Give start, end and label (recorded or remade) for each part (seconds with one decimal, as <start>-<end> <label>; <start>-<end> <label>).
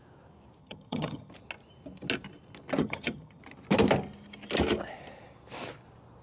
0.0-0.6 recorded; 0.6-1.3 remade; 1.3-2.8 recorded; 2.8-3.4 remade; 3.4-6.2 recorded